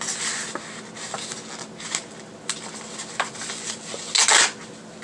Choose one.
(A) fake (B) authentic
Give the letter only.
B